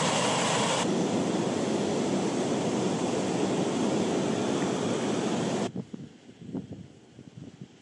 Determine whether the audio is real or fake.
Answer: real